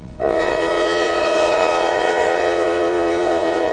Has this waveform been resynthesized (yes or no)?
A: yes